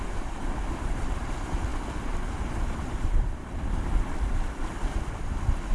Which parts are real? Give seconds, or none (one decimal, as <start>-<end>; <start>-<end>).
0.0-5.7